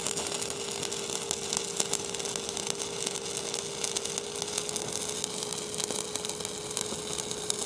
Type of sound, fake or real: real